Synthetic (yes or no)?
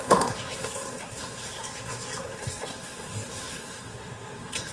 yes